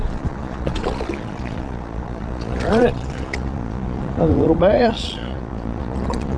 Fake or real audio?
fake